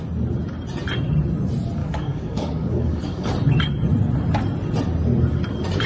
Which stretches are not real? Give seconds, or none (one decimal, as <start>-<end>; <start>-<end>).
1.8-3.3